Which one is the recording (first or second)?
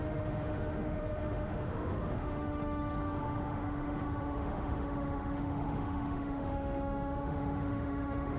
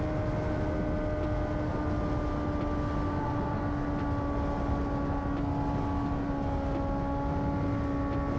second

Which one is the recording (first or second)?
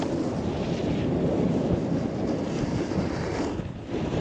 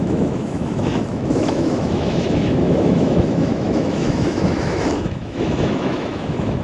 first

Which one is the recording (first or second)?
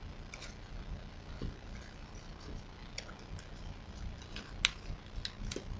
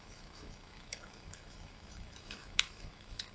first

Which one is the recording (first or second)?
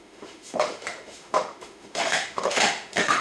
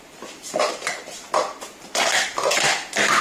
second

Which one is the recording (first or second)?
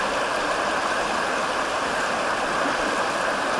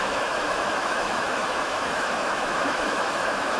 first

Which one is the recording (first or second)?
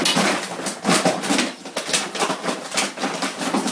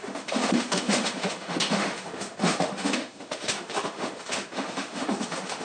first